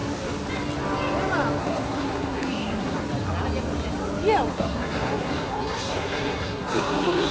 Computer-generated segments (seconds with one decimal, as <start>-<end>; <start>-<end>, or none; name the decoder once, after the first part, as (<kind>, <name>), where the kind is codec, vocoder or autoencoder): 1.6-3.0 (codec, SNAC); 4.5-7.3